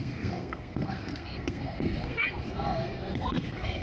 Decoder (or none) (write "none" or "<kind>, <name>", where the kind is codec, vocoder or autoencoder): codec, SNAC